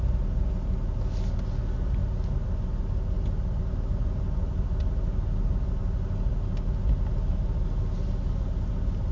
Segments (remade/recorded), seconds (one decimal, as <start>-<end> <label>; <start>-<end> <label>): 0.0-9.1 recorded